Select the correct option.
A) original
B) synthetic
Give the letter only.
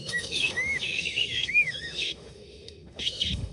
B